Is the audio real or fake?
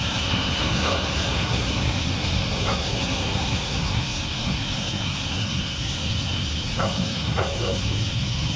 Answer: fake